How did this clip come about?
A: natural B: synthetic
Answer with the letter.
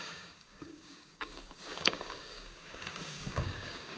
B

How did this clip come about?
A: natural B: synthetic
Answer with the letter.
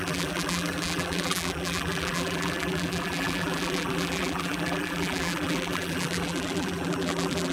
B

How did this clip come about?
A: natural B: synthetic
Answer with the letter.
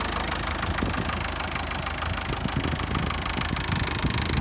A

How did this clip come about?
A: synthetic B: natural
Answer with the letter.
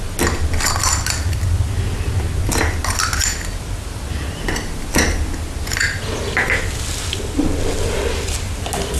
B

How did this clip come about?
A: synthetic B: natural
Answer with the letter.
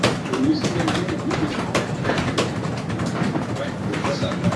A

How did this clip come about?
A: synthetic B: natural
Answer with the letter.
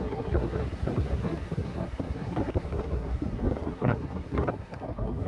A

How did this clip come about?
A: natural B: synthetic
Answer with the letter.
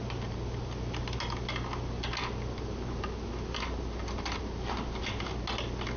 A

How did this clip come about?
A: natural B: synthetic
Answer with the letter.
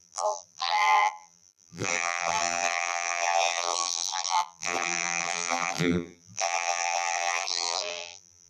B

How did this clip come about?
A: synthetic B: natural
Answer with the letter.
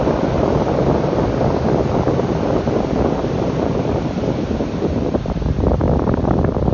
A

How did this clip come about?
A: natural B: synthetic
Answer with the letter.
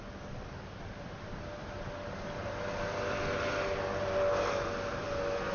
A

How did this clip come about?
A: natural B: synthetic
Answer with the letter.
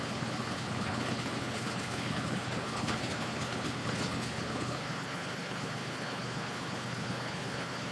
B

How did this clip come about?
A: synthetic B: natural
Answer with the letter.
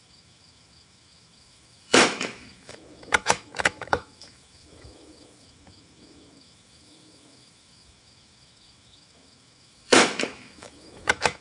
A